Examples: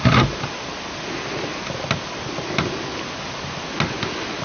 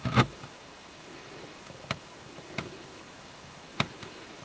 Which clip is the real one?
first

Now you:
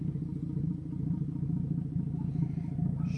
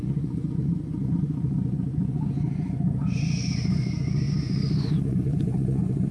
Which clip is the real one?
first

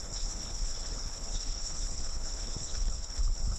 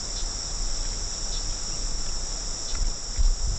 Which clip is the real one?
second